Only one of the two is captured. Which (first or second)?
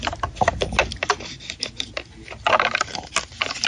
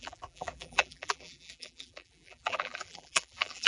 first